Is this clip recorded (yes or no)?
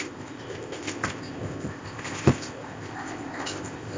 no